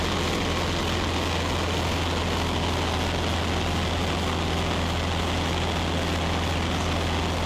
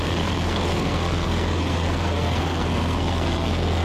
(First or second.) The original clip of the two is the first